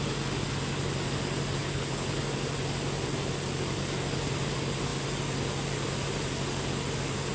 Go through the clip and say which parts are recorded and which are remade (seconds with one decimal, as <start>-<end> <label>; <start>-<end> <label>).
0.0-1.6 recorded; 1.6-2.2 remade; 2.2-7.3 recorded